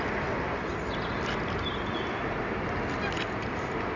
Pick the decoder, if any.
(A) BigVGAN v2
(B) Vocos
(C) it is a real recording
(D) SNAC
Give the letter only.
C